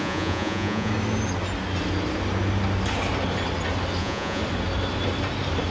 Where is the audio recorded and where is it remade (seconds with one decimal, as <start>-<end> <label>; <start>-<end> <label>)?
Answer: 0.0-0.9 remade; 0.9-4.0 recorded; 4.0-4.4 remade; 4.4-5.7 recorded